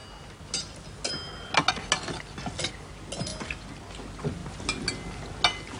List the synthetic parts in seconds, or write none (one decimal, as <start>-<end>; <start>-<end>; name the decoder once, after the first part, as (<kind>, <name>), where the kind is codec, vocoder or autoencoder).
3.3-3.8 (vocoder, BigVGAN v2)